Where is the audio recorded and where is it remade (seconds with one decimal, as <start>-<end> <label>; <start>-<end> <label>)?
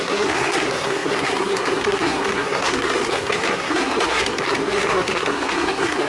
0.0-6.1 remade